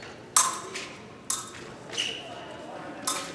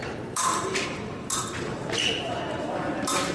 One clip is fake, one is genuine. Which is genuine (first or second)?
first